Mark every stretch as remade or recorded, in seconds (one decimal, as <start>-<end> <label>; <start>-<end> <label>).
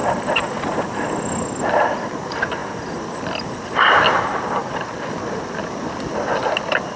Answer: 0.0-7.0 recorded